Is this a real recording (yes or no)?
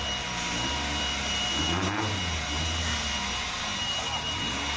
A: yes